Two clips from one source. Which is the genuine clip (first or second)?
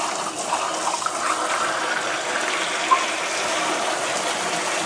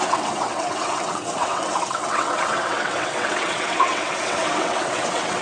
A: first